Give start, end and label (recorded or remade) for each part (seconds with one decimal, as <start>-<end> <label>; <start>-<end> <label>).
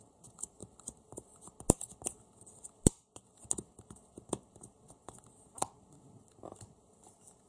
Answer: 0.0-7.5 recorded